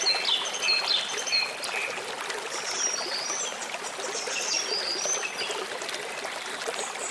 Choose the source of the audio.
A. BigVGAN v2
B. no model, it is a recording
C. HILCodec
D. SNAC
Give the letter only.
B